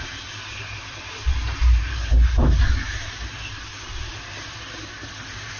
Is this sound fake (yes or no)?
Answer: no